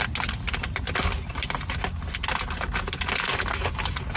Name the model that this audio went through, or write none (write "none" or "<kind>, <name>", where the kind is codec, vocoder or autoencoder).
none